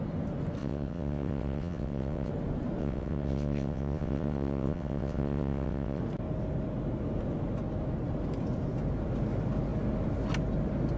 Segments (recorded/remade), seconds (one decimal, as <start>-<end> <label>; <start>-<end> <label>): 0.0-0.6 recorded; 0.6-2.3 remade; 2.3-2.8 recorded; 2.8-6.0 remade; 6.0-11.0 recorded